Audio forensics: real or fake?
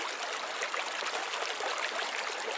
real